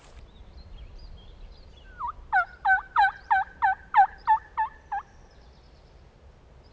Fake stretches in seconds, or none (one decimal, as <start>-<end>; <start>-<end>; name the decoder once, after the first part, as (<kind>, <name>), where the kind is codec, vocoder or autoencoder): 0.4-4.4 (vocoder, BigVGAN v2)